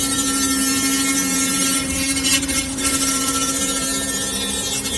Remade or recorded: remade